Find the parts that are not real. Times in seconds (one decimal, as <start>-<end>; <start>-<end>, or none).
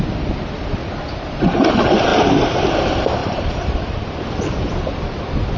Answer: 0.8-1.7; 3.2-4.1